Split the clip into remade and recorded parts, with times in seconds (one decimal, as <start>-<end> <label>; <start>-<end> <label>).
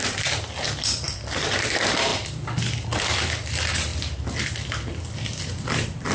0.0-3.9 remade; 3.9-4.9 recorded; 4.9-6.1 remade